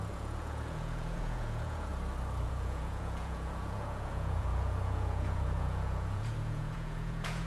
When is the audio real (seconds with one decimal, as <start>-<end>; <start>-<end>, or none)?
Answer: 1.9-2.5